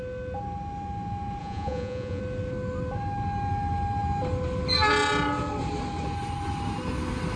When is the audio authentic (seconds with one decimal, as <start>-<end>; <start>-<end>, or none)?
0.0-1.4; 2.2-7.4